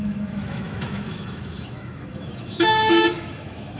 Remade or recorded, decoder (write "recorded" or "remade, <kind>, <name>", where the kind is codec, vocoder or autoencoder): remade, autoencoder, DAC-VAE